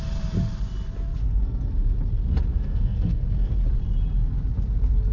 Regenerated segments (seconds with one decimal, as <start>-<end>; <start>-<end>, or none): 1.2-1.7; 2.5-3.5